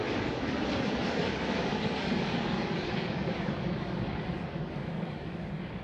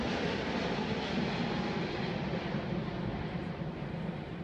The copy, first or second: first